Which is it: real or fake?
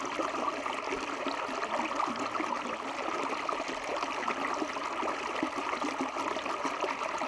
real